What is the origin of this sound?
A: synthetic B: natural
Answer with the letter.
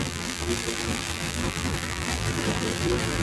A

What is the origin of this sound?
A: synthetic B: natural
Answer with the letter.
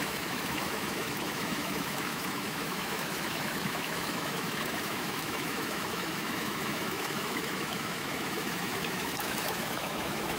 A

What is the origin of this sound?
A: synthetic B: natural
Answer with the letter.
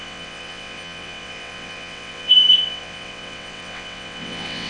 A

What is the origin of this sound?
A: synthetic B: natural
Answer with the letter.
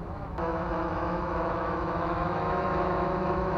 A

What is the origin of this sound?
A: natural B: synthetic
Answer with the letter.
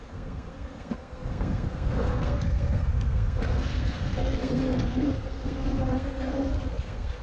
B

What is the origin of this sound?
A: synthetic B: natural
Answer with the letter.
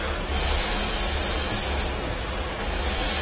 B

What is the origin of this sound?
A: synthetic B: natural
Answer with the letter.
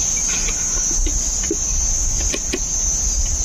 B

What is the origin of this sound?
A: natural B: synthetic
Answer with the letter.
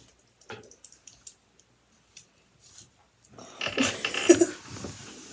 A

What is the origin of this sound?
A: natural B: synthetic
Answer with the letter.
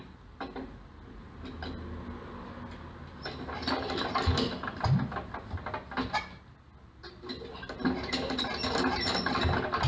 A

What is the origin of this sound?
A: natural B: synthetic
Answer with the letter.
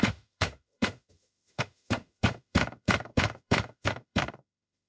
B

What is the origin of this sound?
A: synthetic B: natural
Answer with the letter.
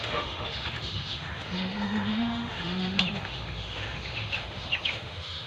A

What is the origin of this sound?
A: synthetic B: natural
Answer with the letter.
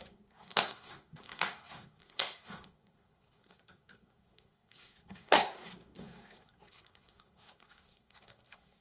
A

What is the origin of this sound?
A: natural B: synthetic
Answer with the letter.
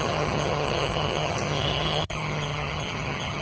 B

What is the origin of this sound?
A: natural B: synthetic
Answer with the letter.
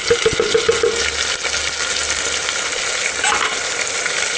A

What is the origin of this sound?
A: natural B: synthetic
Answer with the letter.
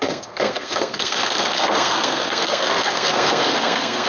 B